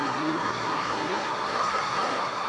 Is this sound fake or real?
fake